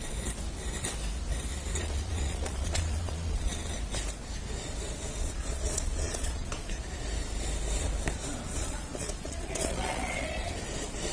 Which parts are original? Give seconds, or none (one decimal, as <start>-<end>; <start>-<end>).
0.0-1.7; 3.5-5.2; 6.8-8.5; 10.5-11.1